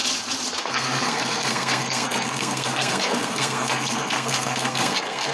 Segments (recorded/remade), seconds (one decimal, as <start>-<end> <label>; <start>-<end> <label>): 0.0-0.6 recorded; 0.6-5.3 remade